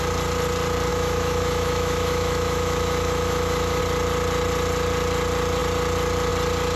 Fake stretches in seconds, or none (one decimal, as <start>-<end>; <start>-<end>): 0.9-3.8